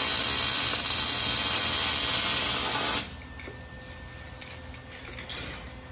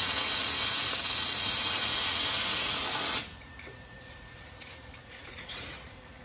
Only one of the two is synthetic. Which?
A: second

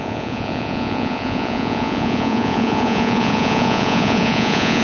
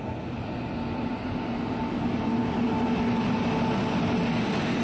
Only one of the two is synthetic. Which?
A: first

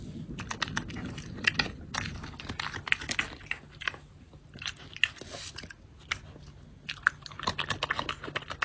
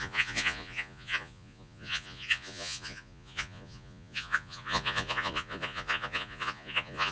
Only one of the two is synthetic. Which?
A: second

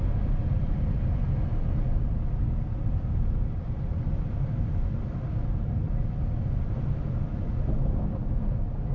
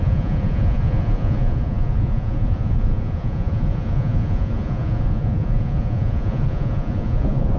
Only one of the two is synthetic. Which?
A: second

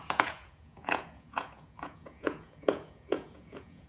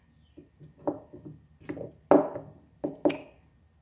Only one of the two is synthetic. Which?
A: first